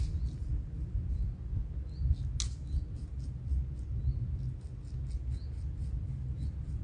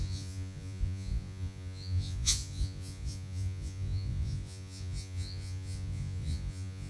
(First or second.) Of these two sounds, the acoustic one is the first